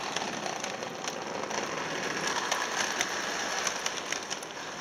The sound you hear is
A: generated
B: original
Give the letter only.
B